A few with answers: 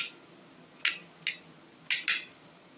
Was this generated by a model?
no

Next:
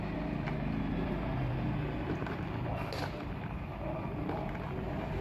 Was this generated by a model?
no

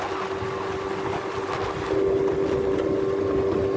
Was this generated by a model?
no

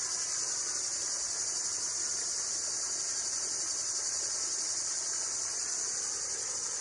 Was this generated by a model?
no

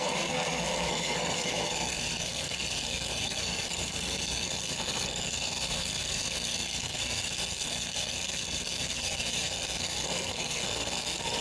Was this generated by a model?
yes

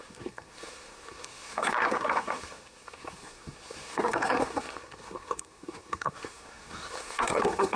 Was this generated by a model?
yes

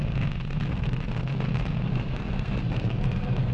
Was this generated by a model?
yes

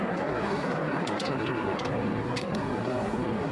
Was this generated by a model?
yes